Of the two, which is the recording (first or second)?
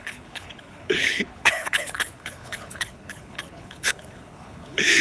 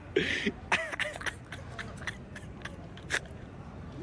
second